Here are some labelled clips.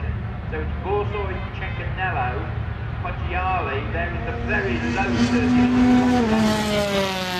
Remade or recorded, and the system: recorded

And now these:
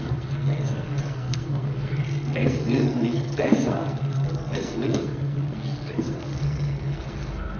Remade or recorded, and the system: remade, codec, SNAC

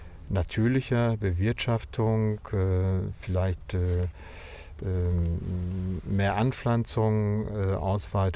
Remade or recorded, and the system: recorded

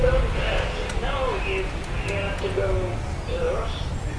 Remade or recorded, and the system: recorded